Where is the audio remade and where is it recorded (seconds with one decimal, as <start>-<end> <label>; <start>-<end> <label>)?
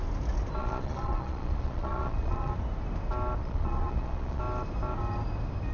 0.0-0.6 recorded; 0.6-2.5 remade; 2.5-3.4 recorded; 3.4-4.4 remade; 4.4-5.7 recorded